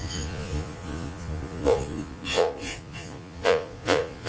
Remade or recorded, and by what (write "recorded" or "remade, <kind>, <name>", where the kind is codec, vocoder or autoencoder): remade, vocoder, Vocos